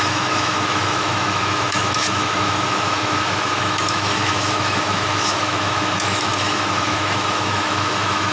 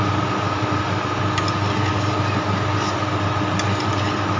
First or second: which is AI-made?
first